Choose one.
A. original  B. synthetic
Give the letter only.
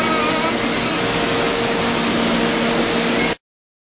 A